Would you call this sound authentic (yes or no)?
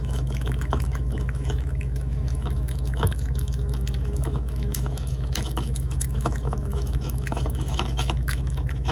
no